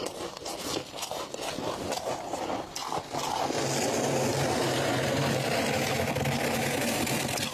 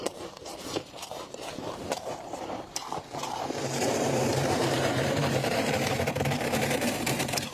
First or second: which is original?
first